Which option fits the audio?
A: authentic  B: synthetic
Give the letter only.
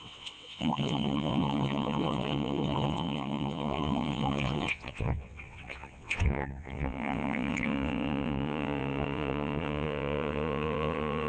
B